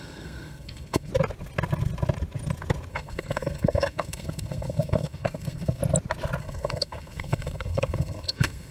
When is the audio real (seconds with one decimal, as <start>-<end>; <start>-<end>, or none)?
1.1-2.9; 5.8-6.4